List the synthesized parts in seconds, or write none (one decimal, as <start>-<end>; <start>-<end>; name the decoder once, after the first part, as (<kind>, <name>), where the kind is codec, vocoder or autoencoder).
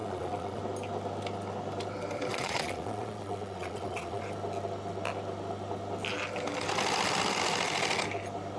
0.0-0.6 (vocoder, Vocos); 2.3-4.2